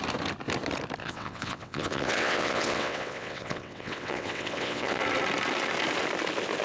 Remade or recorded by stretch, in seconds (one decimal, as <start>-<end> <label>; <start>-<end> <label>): 0.0-1.0 recorded; 1.0-5.0 remade; 5.0-6.6 recorded